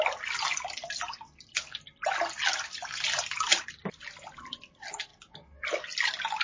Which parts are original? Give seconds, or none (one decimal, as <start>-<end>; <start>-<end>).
0.0-6.4

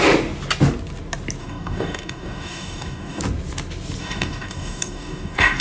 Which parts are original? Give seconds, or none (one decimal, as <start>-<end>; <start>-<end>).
0.0-1.4; 3.2-4.0

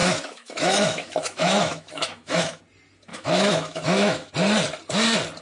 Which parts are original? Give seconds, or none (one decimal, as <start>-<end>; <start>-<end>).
2.6-3.1; 4.3-5.4

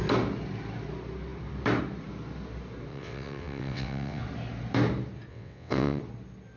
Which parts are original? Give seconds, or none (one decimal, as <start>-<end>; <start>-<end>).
0.0-2.9; 4.2-5.3; 6.0-6.6

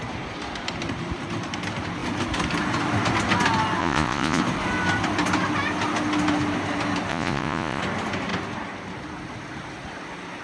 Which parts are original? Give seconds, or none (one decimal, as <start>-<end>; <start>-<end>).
0.0-3.8; 4.4-7.1; 7.8-10.4

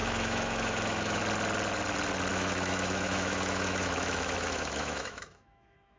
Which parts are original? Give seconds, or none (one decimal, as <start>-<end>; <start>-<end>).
1.2-2.3

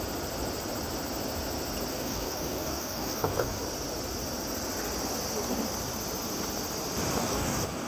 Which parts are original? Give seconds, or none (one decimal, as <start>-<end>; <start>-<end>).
0.0-1.9; 3.6-7.2

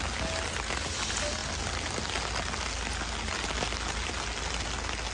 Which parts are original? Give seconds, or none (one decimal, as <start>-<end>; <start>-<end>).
0.0-5.1